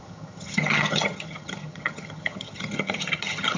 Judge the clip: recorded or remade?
remade